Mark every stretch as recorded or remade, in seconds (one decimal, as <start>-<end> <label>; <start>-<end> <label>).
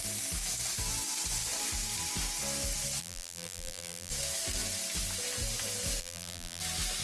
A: 0.0-3.0 recorded; 3.0-4.1 remade; 4.1-6.0 recorded; 6.0-6.6 remade; 6.6-7.0 recorded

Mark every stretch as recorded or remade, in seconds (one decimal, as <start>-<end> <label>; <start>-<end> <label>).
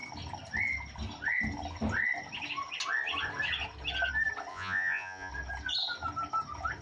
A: 0.0-4.5 recorded; 4.5-5.3 remade; 5.3-6.8 recorded